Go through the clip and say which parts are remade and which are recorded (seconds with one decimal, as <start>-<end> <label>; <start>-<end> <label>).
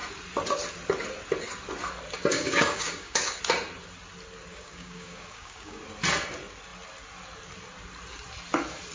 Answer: 0.0-2.3 recorded; 2.3-3.4 remade; 3.4-4.5 recorded; 4.5-5.8 remade; 5.8-8.9 recorded